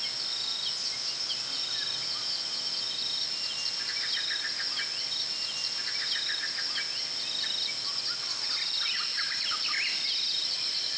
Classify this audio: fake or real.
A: real